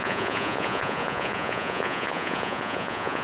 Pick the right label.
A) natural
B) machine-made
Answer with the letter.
B